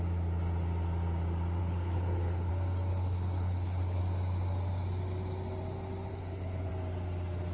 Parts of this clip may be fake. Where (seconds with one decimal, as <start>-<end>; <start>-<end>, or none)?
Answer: 1.6-2.5; 2.9-4.0; 6.1-6.7